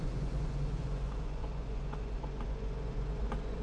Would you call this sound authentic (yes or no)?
no